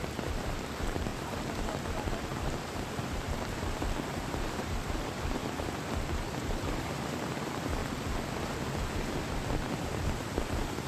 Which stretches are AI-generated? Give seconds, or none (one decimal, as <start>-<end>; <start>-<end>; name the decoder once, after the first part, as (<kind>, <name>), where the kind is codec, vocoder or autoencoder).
0.0-5.4 (vocoder, BigVGAN v2); 6.2-7.8; 10.4-10.9